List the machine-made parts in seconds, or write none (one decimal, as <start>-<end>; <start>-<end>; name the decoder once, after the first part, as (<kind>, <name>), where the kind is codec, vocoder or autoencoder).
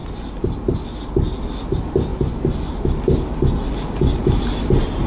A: 2.1-2.8 (vocoder, BigVGAN v2)